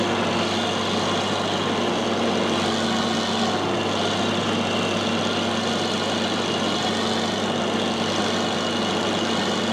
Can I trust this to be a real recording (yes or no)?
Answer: yes